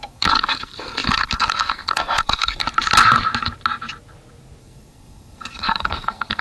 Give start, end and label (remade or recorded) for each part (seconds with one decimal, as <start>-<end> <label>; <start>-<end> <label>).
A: 0.0-2.6 remade; 2.6-4.6 recorded; 4.6-6.4 remade